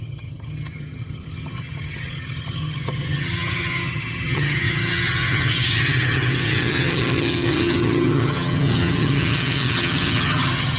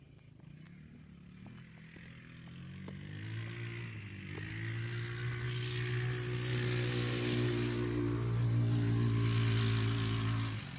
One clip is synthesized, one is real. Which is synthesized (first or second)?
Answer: first